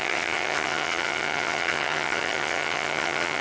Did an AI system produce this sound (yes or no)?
yes